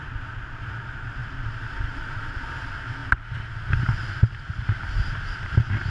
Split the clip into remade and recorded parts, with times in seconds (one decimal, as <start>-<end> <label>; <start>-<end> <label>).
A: 0.0-5.9 recorded